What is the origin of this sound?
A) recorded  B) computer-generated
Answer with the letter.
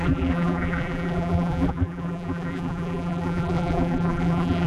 B